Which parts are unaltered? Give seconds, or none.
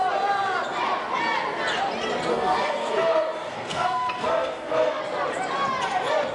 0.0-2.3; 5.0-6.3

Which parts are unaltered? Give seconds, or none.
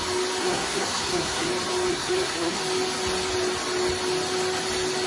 0.0-0.4; 1.5-1.9; 2.6-5.1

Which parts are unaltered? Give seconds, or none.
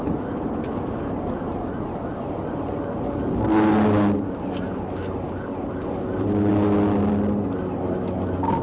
0.0-8.6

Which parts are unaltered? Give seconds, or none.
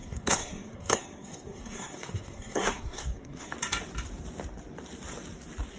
3.5-5.8